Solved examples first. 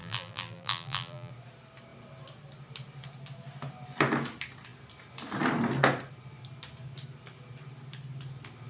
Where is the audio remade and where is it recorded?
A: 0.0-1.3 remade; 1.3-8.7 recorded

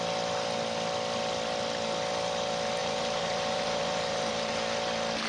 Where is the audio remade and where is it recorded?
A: 0.0-2.8 recorded; 2.8-4.6 remade; 4.6-5.3 recorded

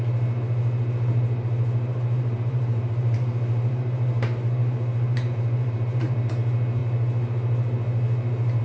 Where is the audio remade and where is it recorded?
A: 0.0-1.9 recorded; 1.9-6.3 remade; 6.3-8.6 recorded

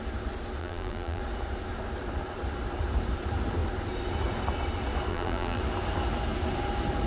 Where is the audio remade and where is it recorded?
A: 0.0-0.6 recorded; 0.6-1.2 remade; 1.2-5.1 recorded; 5.1-5.6 remade; 5.6-7.1 recorded

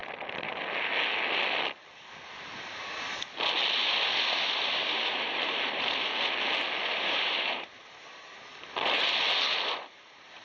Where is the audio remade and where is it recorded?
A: 0.0-4.2 recorded; 4.2-6.1 remade; 6.1-6.8 recorded; 6.8-10.4 remade

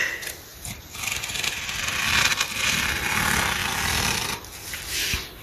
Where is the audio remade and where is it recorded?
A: 0.0-0.5 recorded; 0.5-1.8 remade; 1.8-3.6 recorded; 3.6-4.4 remade; 4.4-5.4 recorded

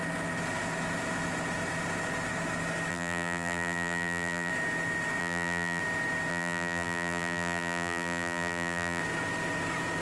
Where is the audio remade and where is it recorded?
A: 0.0-2.9 recorded; 2.9-4.5 remade; 4.5-5.2 recorded; 5.2-5.8 remade; 5.8-6.3 recorded; 6.3-9.0 remade; 9.0-10.0 recorded